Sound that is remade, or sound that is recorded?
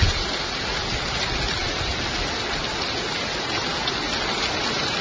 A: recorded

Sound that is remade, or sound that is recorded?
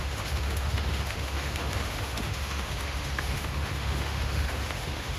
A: remade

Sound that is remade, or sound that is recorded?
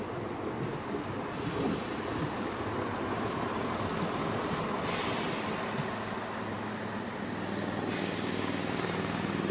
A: recorded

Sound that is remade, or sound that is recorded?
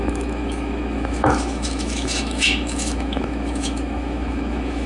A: remade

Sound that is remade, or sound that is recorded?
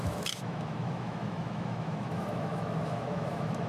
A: remade